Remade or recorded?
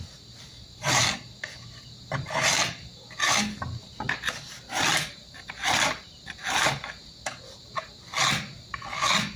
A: recorded